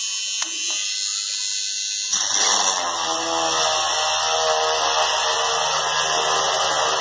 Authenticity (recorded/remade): recorded